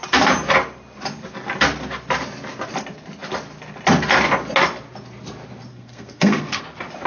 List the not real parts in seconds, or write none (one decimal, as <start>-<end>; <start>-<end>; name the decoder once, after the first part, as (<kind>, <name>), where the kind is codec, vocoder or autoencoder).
5.7-6.6 (codec, SNAC)